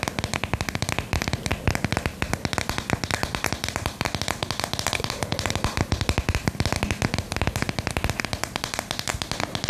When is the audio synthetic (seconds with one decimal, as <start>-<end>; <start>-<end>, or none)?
3.2-4.2